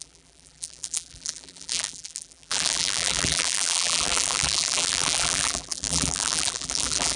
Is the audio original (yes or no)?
no